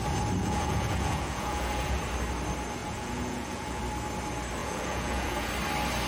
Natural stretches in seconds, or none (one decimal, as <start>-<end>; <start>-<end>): 0.0-0.4; 2.0-2.8; 3.8-4.6; 5.5-6.1